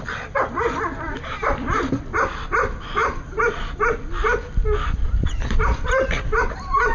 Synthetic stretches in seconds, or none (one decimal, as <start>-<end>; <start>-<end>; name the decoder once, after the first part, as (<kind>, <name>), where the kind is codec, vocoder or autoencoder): none

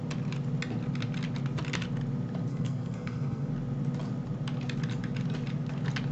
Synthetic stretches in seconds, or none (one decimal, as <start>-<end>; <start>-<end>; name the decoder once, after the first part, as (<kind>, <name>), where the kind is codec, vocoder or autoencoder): 2.5-3.5 (codec, SNAC)

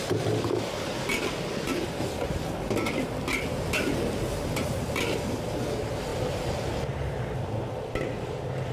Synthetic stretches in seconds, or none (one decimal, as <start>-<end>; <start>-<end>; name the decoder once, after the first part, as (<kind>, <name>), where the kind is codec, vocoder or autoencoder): none

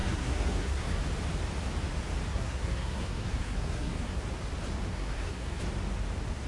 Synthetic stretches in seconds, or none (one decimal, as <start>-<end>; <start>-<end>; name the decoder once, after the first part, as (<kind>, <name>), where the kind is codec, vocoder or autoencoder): 0.0-1.0 (codec, SNAC); 2.3-4.2; 4.9-5.6

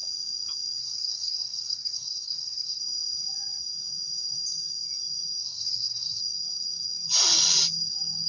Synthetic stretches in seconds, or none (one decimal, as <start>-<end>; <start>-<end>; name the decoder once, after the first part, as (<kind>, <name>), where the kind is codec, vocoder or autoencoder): 0.8-2.8 (codec, SNAC); 5.4-6.2

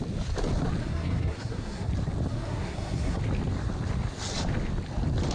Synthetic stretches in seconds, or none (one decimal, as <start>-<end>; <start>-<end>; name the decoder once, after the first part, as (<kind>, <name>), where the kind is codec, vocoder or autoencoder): 0.8-1.9 (codec, SNAC); 2.3-3.2

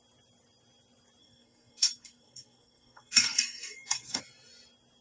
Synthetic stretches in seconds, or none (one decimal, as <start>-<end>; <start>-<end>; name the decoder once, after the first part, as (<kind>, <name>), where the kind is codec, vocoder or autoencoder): 1.2-4.2 (codec, SNAC)